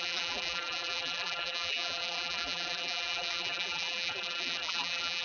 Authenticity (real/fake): fake